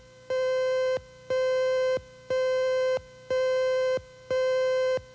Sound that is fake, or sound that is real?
real